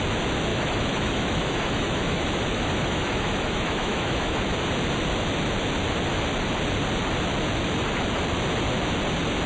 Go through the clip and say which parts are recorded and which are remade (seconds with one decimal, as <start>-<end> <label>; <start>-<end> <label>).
0.0-0.5 recorded; 0.5-4.4 remade; 4.4-9.5 recorded